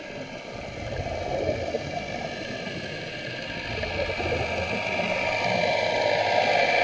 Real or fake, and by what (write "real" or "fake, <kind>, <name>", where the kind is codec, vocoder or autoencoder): real